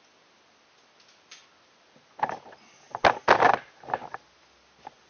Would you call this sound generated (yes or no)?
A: no